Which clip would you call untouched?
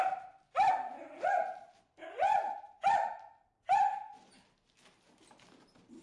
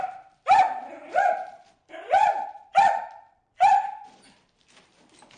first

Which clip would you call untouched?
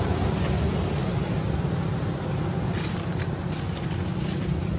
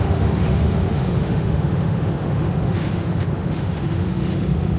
first